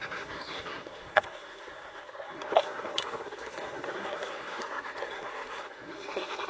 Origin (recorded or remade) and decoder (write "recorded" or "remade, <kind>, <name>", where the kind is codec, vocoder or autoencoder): remade, codec, SNAC